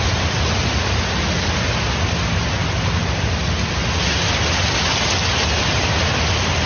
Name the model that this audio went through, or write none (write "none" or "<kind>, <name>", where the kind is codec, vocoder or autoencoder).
none